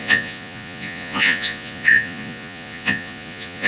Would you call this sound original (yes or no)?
no